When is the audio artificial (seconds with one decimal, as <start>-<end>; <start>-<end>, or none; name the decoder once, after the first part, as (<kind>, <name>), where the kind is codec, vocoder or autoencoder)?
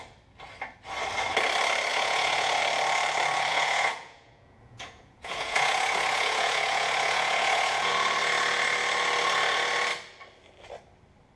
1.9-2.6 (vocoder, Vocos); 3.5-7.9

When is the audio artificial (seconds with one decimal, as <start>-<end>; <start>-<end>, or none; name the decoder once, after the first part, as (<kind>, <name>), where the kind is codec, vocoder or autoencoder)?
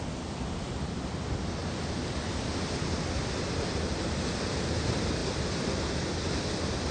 none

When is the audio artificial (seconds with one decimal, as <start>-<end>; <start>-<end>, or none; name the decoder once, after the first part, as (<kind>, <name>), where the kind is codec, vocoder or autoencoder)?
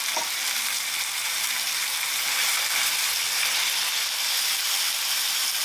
1.2-3.4 (vocoder, BigVGAN v2)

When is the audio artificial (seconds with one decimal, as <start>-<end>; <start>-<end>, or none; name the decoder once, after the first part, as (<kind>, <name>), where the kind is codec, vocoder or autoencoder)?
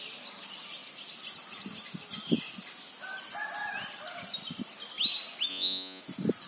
5.5-6.0 (vocoder, Vocos)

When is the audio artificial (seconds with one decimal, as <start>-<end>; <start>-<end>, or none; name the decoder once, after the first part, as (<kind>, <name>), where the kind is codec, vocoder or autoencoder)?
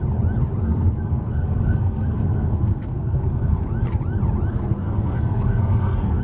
0.6-3.6 (codec, SNAC); 4.5-6.2